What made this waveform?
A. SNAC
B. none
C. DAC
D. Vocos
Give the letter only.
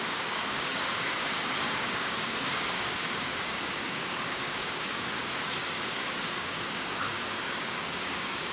C